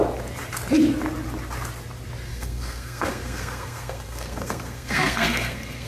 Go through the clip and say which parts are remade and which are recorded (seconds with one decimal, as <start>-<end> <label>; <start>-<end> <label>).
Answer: 0.0-2.3 recorded; 2.3-5.9 remade